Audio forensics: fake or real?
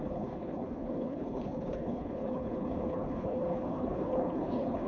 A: fake